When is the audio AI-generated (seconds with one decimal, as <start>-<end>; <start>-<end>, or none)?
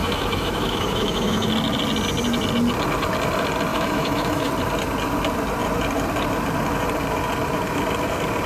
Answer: 0.0-1.5; 3.7-4.5